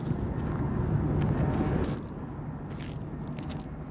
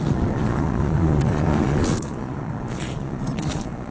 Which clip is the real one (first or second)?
first